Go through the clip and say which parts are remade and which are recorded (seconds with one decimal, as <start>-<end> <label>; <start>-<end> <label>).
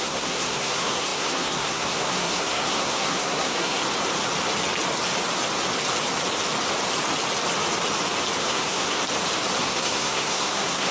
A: 0.0-3.8 remade; 3.8-8.4 recorded; 8.4-9.0 remade; 9.0-9.6 recorded; 9.6-10.9 remade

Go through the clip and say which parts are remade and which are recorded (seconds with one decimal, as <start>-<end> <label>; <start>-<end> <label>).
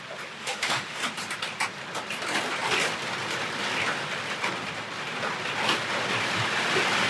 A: 0.0-0.4 recorded; 0.4-1.0 remade; 1.0-7.1 recorded